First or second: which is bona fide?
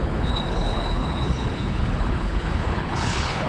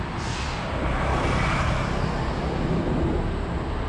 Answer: second